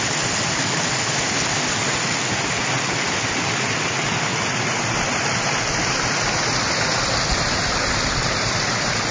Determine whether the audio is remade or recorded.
recorded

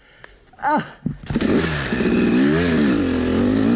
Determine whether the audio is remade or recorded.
recorded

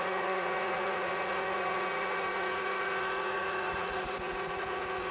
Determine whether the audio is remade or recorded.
remade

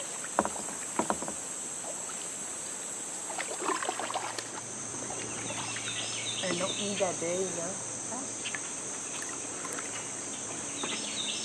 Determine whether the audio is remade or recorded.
recorded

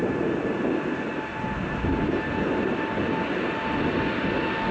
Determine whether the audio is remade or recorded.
recorded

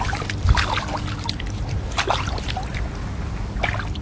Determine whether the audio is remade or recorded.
recorded